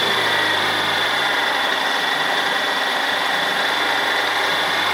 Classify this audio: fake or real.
fake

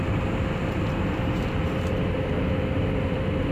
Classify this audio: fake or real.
real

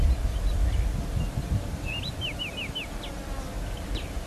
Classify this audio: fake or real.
real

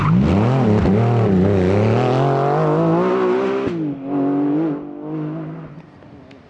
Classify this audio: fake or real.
real